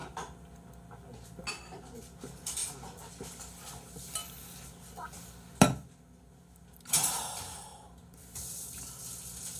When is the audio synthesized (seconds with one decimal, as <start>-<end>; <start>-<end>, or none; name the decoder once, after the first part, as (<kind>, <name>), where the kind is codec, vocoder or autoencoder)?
none